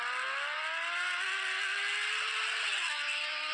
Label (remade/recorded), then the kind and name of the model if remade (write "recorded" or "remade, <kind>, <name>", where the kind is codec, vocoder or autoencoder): recorded